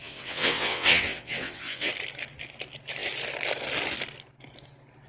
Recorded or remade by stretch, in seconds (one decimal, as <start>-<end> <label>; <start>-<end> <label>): 0.0-1.9 remade; 1.9-5.1 recorded